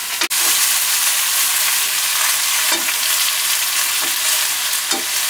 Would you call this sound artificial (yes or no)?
no